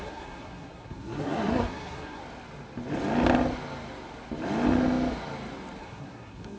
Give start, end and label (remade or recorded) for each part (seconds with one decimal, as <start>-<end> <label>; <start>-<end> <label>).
0.0-2.2 remade; 2.2-5.8 recorded; 5.8-6.6 remade